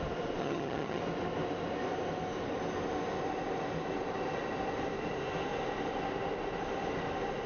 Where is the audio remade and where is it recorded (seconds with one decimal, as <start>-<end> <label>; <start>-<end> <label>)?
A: 0.0-0.4 recorded; 0.4-1.0 remade; 1.0-7.5 recorded